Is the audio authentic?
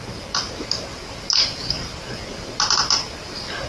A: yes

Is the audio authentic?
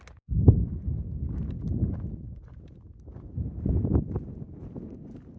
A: yes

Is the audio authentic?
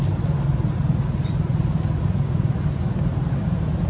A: yes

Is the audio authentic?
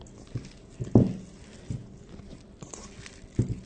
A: yes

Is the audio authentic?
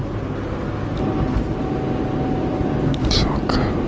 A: yes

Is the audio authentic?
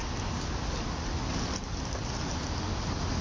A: yes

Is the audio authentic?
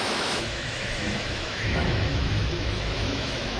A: no